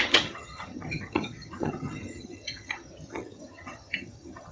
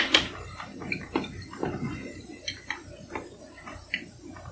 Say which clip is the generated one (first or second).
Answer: first